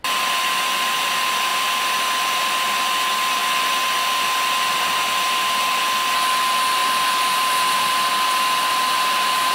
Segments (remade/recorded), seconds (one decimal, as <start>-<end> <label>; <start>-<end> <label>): 0.0-1.5 recorded; 1.5-2.5 remade; 2.5-6.8 recorded; 6.8-8.1 remade; 8.1-9.5 recorded